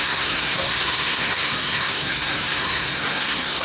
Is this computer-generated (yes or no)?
yes